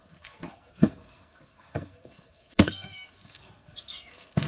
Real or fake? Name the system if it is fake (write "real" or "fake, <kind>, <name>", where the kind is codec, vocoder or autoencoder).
fake, codec, SNAC